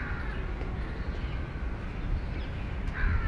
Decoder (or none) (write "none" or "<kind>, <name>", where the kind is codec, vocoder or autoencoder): none